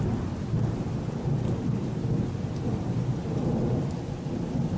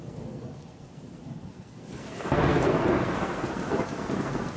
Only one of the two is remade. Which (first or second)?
second